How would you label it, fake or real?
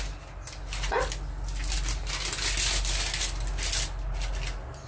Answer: real